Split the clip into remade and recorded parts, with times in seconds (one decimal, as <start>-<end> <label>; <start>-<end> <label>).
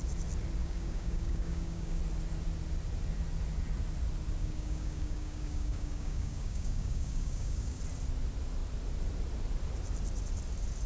0.0-0.6 recorded; 0.6-2.0 remade; 2.0-4.4 recorded; 4.4-7.8 remade; 7.8-10.9 recorded